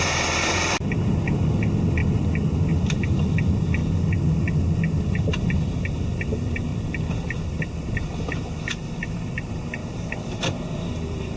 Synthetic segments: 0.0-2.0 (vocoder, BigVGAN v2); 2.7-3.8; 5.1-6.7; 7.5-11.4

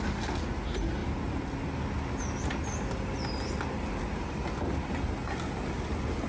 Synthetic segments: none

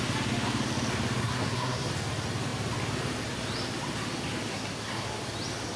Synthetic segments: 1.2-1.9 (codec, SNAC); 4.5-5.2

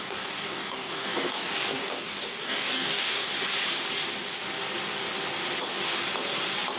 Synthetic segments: 0.0-3.3 (codec, DAC)